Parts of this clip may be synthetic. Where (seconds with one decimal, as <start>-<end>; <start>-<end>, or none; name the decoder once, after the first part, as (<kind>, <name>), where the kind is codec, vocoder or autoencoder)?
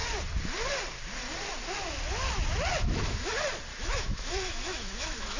2.8-3.3 (autoencoder, DAC-VAE); 3.7-5.4